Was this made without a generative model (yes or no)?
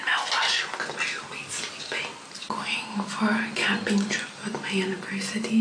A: yes